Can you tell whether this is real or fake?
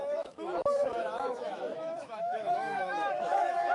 fake